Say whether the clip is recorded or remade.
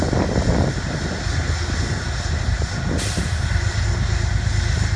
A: recorded